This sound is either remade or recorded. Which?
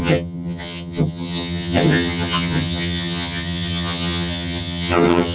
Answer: remade